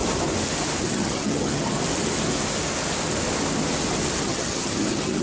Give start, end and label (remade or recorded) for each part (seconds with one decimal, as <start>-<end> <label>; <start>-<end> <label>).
0.0-0.8 recorded; 0.8-1.8 remade; 1.8-4.2 recorded; 4.2-5.2 remade